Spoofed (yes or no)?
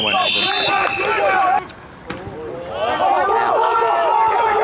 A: no